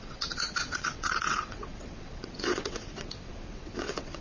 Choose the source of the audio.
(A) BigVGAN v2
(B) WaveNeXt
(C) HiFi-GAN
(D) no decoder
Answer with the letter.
B